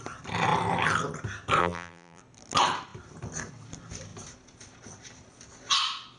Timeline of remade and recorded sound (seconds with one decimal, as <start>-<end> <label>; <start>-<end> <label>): 0.0-1.6 recorded; 1.6-2.2 remade; 2.2-6.2 recorded